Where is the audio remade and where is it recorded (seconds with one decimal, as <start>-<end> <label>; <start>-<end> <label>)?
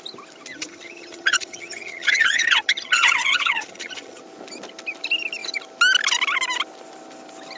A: 0.0-0.5 recorded; 0.5-4.2 remade; 4.2-7.6 recorded